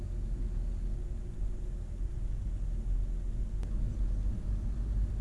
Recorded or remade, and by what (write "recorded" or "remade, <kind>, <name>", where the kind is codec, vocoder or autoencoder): recorded